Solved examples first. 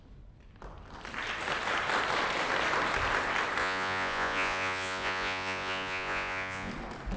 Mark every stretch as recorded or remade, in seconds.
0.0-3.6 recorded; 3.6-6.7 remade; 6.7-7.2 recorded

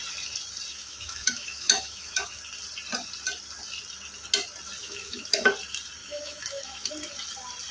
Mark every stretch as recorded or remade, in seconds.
0.0-0.7 recorded; 0.7-2.4 remade; 2.4-4.8 recorded; 4.8-5.5 remade; 5.5-6.0 recorded; 6.0-6.9 remade; 6.9-7.7 recorded